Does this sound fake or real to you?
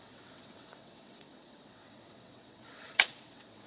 fake